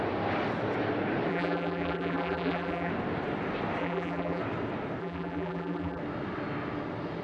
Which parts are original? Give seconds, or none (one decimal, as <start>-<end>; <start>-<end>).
0.0-1.3; 2.9-3.8; 4.4-5.0; 6.0-7.2